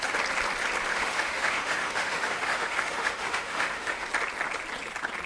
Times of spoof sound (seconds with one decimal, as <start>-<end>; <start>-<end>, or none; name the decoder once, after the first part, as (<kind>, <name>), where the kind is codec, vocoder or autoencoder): 0.9-4.1 (autoencoder, DAC-VAE)